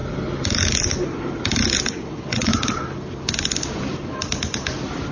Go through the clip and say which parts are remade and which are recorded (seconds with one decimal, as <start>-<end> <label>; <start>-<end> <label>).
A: 0.0-1.9 recorded; 1.9-2.5 remade; 2.5-5.1 recorded